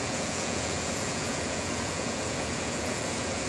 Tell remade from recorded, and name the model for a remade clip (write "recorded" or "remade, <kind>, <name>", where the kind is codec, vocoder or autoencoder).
remade, vocoder, Vocos